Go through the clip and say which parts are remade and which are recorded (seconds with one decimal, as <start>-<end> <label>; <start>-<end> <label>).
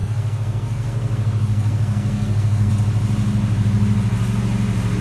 0.0-2.7 remade; 2.7-5.0 recorded